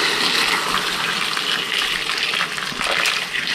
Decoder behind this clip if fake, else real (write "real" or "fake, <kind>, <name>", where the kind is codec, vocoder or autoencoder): real